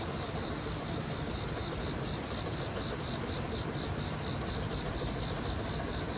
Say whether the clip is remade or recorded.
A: recorded